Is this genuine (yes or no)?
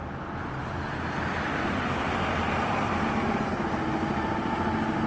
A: yes